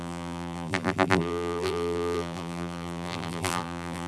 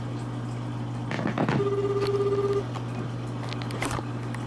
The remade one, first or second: first